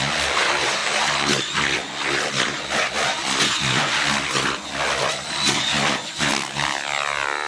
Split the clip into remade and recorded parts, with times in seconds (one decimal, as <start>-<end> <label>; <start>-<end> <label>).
0.0-6.3 remade; 6.3-7.5 recorded